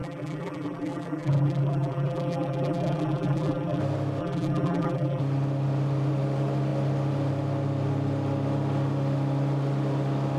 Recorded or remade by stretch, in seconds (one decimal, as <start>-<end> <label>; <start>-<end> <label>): 0.0-3.8 remade; 3.8-4.2 recorded; 4.2-5.2 remade; 5.2-10.4 recorded